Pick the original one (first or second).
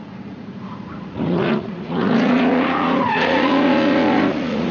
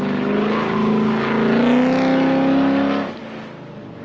second